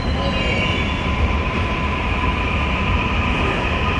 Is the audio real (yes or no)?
yes